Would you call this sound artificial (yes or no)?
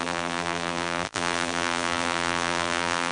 yes